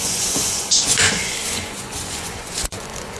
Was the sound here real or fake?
fake